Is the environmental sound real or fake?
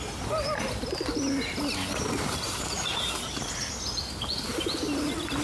real